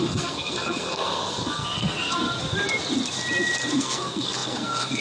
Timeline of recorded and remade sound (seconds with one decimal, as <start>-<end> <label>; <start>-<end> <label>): 0.0-2.2 remade; 2.2-3.8 recorded; 3.8-5.0 remade